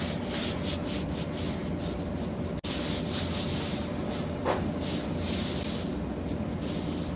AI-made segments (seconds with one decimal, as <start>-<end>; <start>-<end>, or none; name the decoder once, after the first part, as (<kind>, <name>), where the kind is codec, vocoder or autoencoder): none